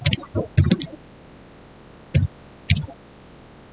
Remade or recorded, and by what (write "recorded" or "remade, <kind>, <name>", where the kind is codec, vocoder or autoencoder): recorded